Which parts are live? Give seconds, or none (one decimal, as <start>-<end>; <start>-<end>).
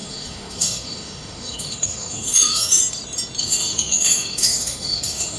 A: 2.8-3.4